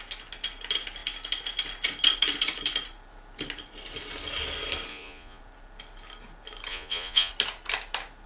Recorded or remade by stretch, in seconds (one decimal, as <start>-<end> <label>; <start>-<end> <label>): 0.0-4.9 recorded; 4.9-5.4 remade; 5.4-6.7 recorded; 6.7-7.3 remade; 7.3-8.3 recorded